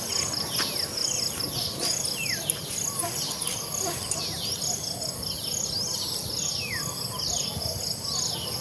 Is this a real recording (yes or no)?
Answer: yes